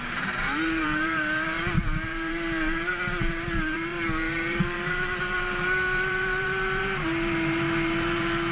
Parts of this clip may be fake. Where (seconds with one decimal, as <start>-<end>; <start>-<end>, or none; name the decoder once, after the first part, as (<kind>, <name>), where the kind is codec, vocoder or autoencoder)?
0.0-8.5 (vocoder, BigVGAN v2)

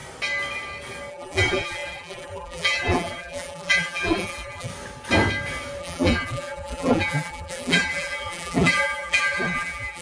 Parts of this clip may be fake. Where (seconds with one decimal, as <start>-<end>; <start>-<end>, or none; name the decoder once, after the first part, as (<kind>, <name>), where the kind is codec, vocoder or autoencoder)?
1.1-4.7 (vocoder, BigVGAN v2); 5.8-10.0

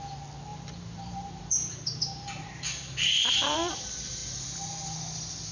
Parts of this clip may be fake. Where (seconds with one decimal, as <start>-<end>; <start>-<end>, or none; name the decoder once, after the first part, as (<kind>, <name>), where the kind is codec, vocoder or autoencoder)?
0.5-3.8 (vocoder, BigVGAN v2)

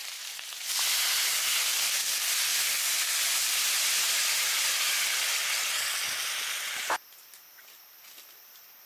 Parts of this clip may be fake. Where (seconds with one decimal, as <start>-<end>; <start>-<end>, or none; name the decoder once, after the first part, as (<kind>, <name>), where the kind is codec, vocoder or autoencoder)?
0.0-0.7 (vocoder, BigVGAN v2)